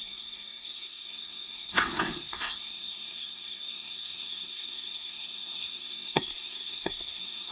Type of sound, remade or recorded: remade